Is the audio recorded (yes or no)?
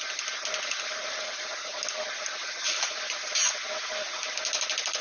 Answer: yes